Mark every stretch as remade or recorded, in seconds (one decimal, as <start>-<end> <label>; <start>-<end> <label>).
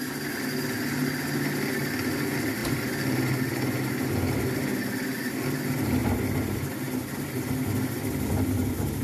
0.0-9.0 recorded